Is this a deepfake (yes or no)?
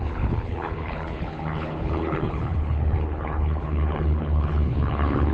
yes